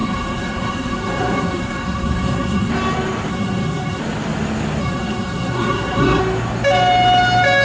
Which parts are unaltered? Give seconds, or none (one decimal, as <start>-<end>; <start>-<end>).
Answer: 2.7-3.3; 4.0-4.8; 6.2-7.6